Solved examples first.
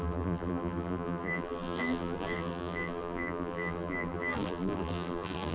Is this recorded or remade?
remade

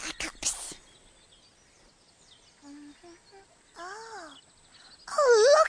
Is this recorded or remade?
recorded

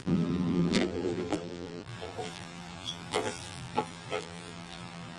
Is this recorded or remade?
remade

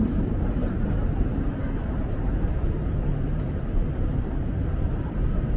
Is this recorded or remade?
remade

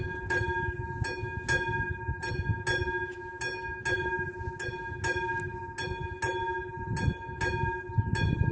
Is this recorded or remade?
recorded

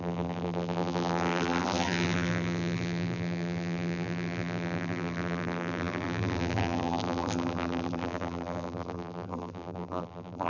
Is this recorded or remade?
remade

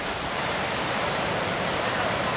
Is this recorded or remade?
remade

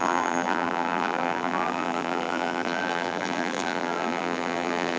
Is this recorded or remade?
remade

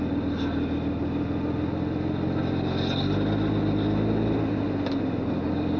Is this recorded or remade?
recorded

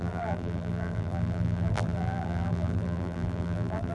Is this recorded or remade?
remade